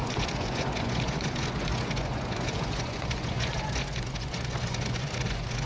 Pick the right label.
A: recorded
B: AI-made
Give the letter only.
B